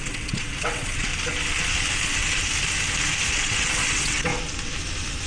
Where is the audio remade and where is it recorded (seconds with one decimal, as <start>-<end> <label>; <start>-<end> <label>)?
0.0-1.1 remade; 1.1-3.3 recorded; 3.3-4.3 remade; 4.3-5.3 recorded